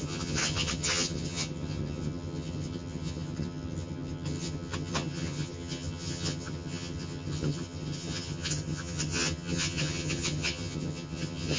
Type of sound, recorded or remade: remade